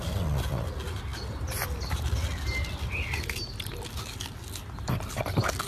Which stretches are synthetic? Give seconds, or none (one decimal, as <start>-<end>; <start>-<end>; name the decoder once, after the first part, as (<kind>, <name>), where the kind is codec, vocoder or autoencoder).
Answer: none